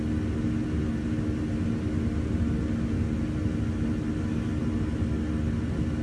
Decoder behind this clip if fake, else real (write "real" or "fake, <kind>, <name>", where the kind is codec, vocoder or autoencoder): real